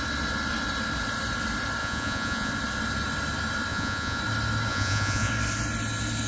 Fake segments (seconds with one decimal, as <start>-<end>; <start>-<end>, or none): 1.8-2.5; 3.7-4.2; 4.7-5.3

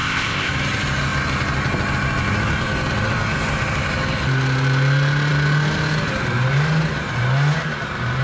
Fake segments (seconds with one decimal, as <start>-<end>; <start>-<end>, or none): 0.0-0.5